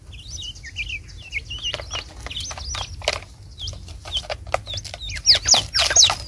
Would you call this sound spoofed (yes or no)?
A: no